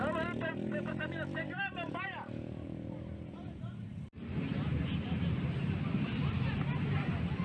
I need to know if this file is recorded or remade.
remade